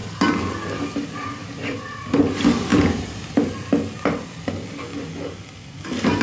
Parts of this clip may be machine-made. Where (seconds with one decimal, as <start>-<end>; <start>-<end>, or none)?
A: 0.0-0.5; 1.4-2.2; 2.7-3.2